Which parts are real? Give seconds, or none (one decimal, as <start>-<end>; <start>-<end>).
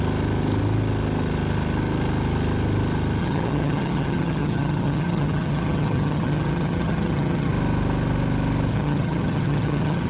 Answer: 0.0-3.2; 7.5-8.7